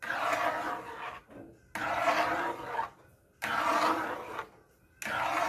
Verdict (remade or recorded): recorded